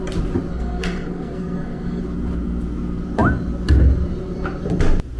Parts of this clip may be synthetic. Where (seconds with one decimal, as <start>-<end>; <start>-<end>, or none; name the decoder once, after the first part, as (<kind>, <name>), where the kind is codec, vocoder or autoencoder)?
0.5-2.0 (codec, SNAC)

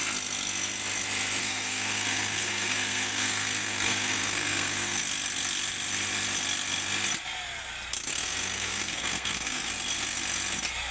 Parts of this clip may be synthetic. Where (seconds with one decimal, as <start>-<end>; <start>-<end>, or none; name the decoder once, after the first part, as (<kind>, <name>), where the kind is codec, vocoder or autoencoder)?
1.4-5.0 (codec, SNAC); 8.1-9.7